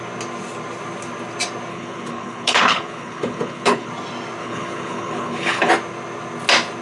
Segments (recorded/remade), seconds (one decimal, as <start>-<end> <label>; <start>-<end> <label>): 0.0-1.7 recorded; 1.7-3.9 remade; 3.9-4.4 recorded; 4.4-5.7 remade; 5.7-6.8 recorded